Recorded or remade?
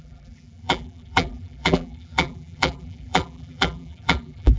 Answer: remade